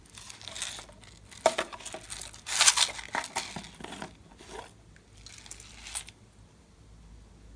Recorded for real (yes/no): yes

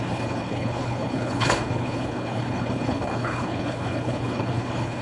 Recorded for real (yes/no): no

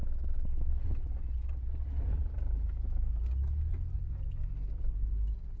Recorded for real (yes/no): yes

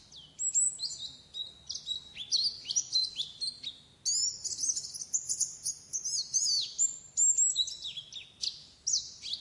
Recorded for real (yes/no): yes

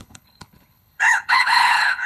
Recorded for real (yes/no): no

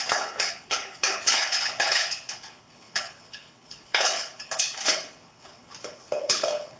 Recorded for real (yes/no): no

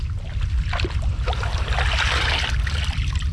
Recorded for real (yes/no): yes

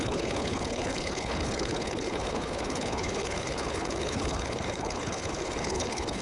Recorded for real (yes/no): no